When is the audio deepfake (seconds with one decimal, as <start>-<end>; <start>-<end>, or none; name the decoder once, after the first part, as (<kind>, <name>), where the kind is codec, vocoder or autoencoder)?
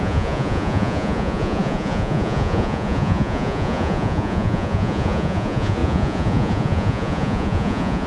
0.0-8.1 (vocoder, Vocos)